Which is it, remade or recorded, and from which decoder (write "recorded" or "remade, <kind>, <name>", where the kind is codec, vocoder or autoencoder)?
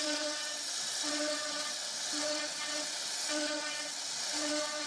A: remade, vocoder, WaveNeXt